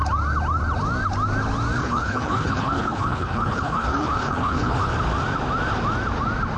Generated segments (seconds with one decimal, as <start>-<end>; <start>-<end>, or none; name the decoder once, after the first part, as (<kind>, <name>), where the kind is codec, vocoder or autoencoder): 1.8-4.9 (codec, HILCodec)